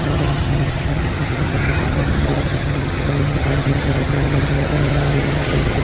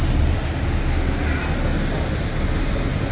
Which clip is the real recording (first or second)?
second